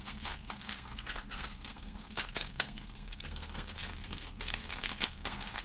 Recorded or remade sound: remade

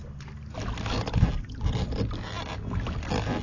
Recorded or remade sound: recorded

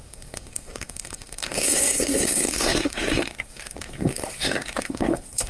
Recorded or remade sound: remade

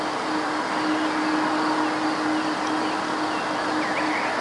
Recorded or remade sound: recorded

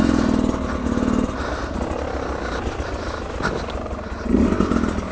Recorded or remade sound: recorded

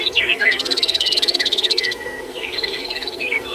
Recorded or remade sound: remade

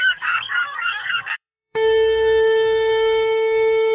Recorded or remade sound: remade